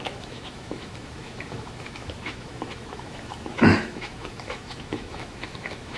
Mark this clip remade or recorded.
remade